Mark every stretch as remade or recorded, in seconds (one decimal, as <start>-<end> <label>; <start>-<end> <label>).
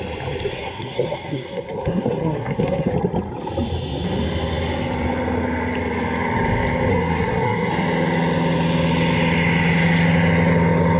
0.0-0.5 recorded; 0.5-2.9 remade; 2.9-6.9 recorded; 6.9-7.7 remade; 7.7-11.0 recorded